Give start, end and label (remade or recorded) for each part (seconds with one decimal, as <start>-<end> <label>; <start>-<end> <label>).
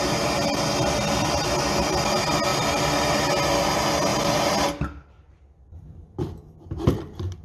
0.0-7.4 recorded